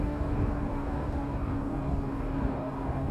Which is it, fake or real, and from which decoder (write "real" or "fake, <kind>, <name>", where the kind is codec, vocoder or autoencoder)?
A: fake, codec, DAC